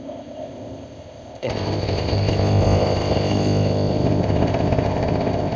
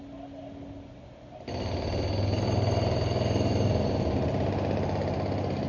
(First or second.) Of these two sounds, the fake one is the first